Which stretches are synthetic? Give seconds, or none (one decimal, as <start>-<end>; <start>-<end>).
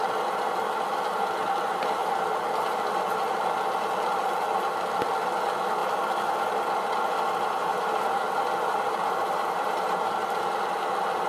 7.6-8.2; 9.0-10.1